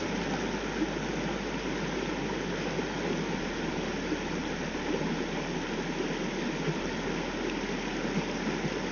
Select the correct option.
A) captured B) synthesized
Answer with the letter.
A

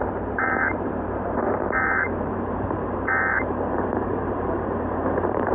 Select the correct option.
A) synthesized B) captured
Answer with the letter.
A